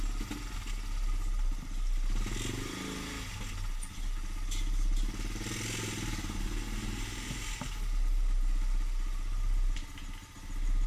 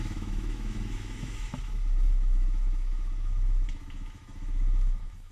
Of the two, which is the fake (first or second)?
second